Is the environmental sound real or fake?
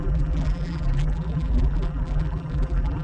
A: fake